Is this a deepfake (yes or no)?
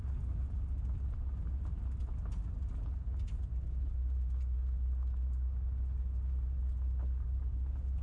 no